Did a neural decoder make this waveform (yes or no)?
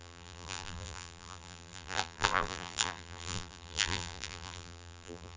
yes